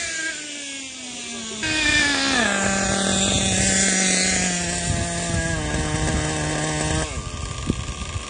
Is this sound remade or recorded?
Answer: recorded